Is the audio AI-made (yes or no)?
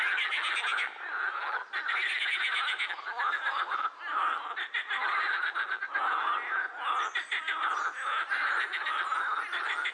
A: no